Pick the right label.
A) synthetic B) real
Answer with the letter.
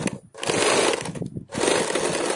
B